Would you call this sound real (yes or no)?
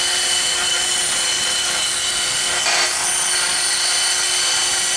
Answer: yes